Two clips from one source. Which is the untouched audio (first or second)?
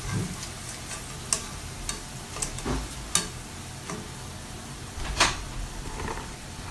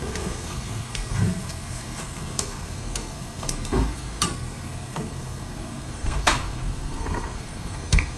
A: first